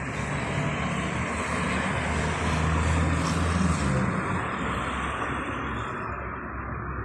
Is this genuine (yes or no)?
yes